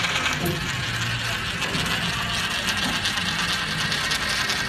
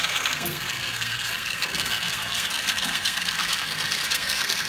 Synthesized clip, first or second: second